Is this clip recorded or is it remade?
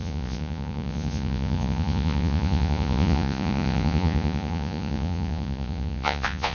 remade